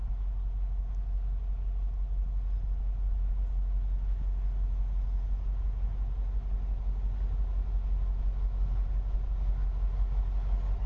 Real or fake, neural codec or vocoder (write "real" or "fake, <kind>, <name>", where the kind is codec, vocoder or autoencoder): real